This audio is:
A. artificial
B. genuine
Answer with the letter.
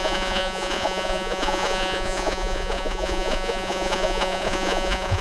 A